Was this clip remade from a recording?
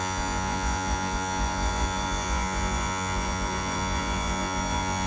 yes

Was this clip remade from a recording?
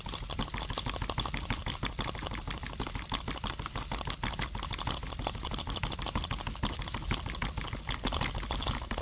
no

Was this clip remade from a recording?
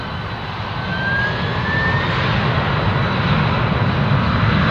no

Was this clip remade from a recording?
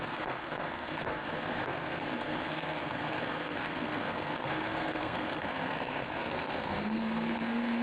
yes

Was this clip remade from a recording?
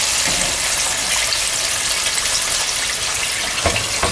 no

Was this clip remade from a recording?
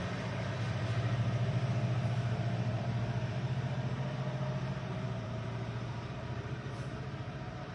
yes